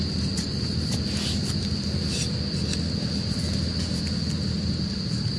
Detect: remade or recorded recorded